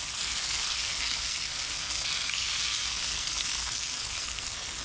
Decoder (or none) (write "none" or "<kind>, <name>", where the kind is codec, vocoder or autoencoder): codec, SNAC